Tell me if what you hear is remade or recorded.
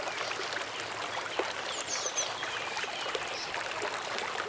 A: recorded